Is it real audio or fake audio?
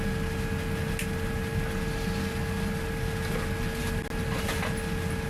real